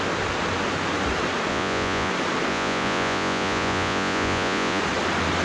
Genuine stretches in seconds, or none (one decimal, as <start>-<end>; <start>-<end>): 0.0-1.5; 2.1-2.5; 4.8-5.4

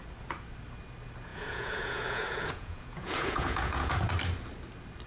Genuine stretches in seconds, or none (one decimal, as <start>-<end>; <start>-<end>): 0.0-1.3; 4.1-5.1

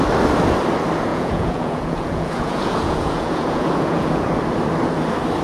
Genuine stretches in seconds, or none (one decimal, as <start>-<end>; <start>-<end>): 0.0-1.1; 4.3-5.4

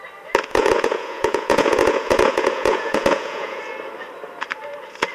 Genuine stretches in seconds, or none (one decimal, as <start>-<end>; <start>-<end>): 0.0-0.5; 3.6-5.1

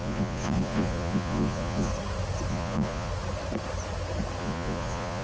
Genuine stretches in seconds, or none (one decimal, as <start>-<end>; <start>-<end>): 1.9-2.5; 3.1-4.4

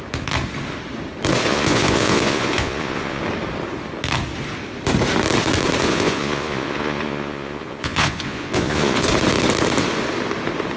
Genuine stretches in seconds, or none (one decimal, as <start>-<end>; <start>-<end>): 0.0-1.5; 3.2-5.8; 9.1-10.8